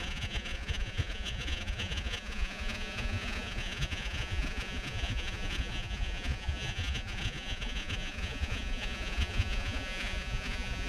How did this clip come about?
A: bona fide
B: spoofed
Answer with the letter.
B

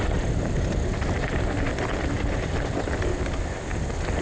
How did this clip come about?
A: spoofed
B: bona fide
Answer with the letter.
B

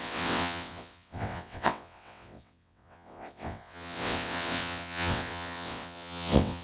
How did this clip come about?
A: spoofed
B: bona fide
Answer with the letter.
A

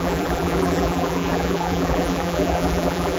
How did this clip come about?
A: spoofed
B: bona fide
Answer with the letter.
A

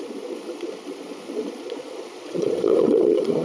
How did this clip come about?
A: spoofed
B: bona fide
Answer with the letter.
A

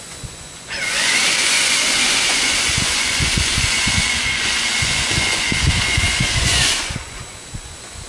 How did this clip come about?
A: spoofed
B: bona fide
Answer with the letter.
A